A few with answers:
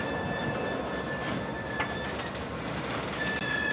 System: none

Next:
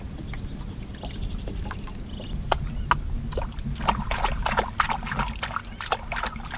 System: none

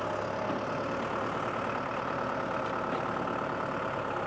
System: none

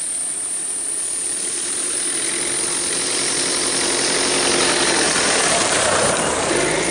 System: none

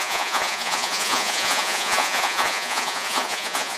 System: vocoder, Vocos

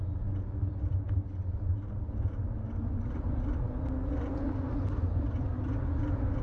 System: none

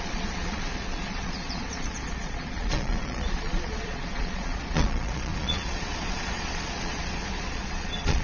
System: vocoder, Vocos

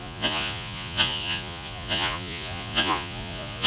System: vocoder, Vocos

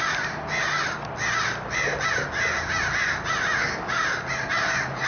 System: none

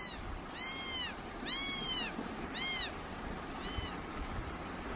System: none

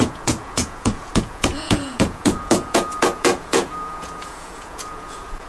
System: vocoder, Vocos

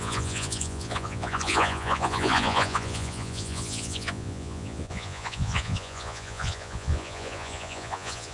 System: vocoder, Vocos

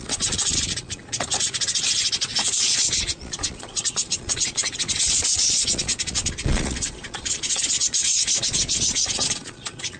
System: vocoder, Vocos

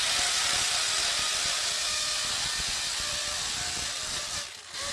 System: none